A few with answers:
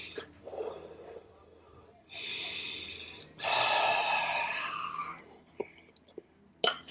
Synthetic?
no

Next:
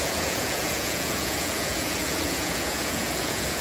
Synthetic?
yes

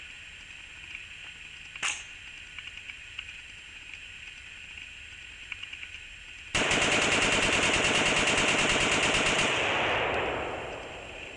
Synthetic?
no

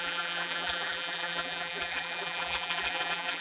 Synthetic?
yes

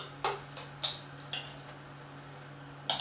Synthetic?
no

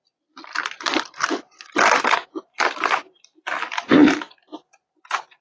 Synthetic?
no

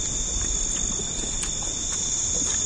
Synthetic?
no